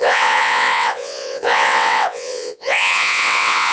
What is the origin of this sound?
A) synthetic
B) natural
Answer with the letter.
A